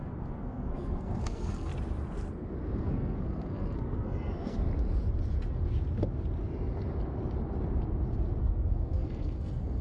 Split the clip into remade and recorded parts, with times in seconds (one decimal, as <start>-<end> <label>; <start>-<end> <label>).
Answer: 0.0-1.7 remade; 1.7-2.8 recorded; 2.8-4.6 remade; 4.6-8.4 recorded; 8.4-9.8 remade